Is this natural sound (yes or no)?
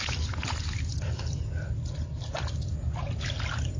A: yes